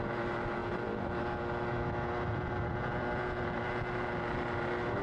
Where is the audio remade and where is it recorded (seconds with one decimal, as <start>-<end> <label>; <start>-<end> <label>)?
0.0-0.6 recorded; 0.6-1.2 remade; 1.2-2.3 recorded; 2.3-3.7 remade; 3.7-5.0 recorded